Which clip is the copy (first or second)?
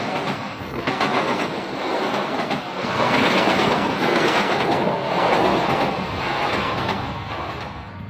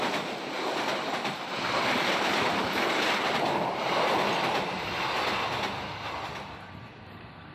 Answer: first